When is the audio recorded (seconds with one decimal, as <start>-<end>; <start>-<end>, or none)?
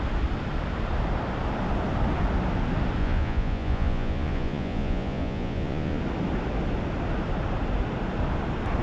0.0-3.0; 6.0-8.8